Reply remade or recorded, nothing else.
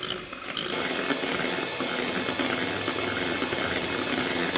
recorded